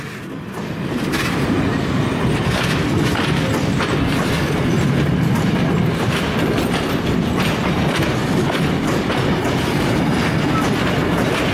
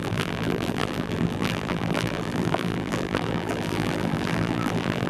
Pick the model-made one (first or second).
second